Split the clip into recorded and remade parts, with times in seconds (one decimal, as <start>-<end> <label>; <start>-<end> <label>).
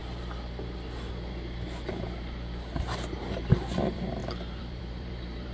0.0-3.2 recorded; 3.2-5.5 remade